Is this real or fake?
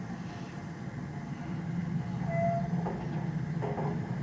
real